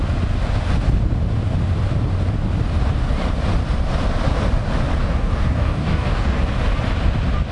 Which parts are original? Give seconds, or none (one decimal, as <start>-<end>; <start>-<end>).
0.0-5.0; 6.4-7.5